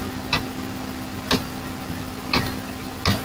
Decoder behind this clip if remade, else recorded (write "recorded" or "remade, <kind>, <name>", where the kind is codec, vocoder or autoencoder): recorded